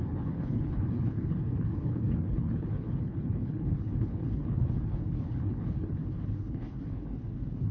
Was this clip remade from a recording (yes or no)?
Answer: yes